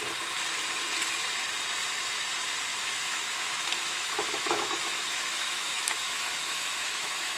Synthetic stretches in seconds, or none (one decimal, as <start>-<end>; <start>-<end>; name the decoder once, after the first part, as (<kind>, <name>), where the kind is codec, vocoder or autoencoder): 2.7-7.4 (autoencoder, DAC-VAE)